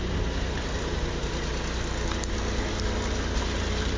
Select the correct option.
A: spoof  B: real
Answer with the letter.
B